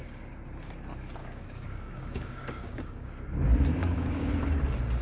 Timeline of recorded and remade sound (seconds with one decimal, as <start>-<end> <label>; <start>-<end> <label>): 0.0-1.2 recorded; 1.2-3.1 remade; 3.1-3.8 recorded; 3.8-4.3 remade; 4.3-5.0 recorded